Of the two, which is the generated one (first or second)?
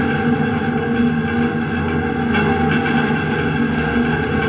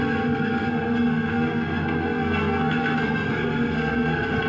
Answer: second